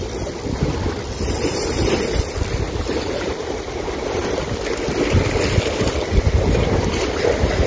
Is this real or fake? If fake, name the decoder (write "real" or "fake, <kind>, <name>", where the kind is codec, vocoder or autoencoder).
real